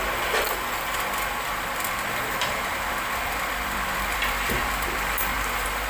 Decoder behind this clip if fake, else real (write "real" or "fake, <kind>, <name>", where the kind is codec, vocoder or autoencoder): fake, vocoder, BigVGAN v2